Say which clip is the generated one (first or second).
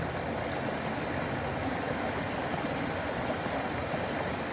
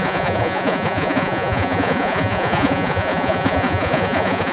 second